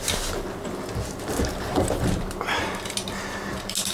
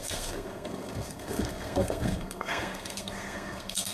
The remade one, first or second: second